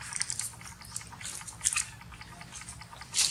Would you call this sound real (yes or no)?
yes